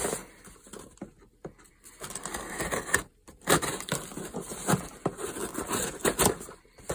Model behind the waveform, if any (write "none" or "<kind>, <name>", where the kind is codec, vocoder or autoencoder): vocoder, BigVGAN v2